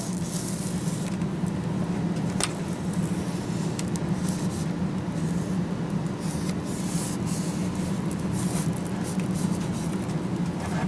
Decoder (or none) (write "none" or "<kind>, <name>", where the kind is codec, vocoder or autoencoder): none